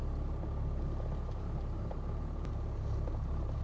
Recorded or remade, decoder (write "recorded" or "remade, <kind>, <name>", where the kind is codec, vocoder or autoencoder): recorded